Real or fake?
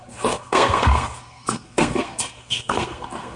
fake